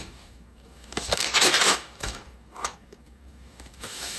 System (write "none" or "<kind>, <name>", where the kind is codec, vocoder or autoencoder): codec, DAC